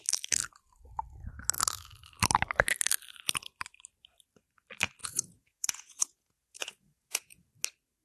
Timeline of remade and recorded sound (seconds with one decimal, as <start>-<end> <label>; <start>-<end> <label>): 0.0-5.0 recorded; 5.0-7.5 remade; 7.5-8.0 recorded